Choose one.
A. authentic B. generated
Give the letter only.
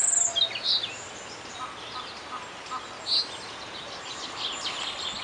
A